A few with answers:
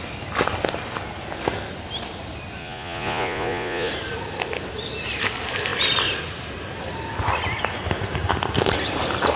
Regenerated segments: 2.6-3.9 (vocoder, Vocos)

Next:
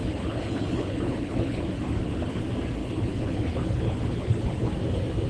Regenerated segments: 0.0-2.4 (codec, HILCodec); 2.8-4.7

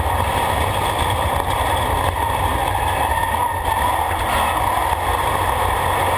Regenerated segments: 0.0-2.5 (vocoder, BigVGAN v2); 5.1-6.2

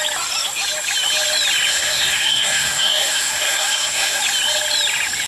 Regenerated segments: 1.7-4.2 (codec, SNAC)